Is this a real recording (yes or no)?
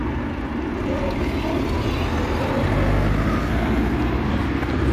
yes